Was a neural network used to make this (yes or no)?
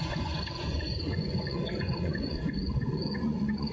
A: yes